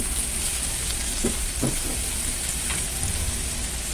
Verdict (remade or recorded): recorded